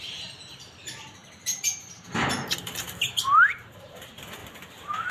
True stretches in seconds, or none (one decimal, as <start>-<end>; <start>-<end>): 4.4-5.1